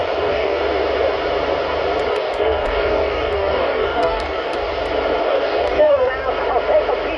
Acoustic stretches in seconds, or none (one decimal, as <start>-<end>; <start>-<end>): 0.6-2.1; 4.7-5.2; 6.1-7.2